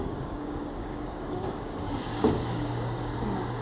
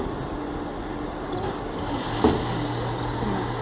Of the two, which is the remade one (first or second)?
first